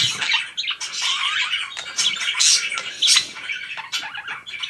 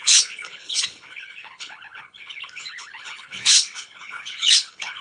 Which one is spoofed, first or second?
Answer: second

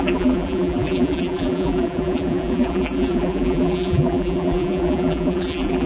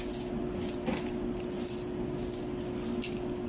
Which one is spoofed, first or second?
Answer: first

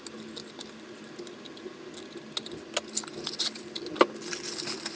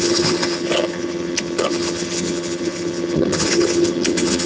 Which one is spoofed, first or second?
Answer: second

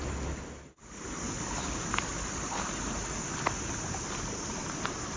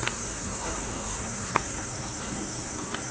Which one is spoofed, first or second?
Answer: second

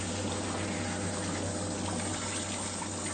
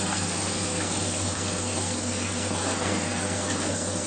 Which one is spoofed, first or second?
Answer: second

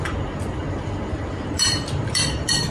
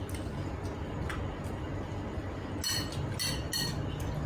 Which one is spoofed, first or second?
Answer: first